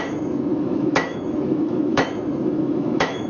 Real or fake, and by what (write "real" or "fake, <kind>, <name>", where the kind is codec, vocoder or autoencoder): fake, autoencoder, DAC-VAE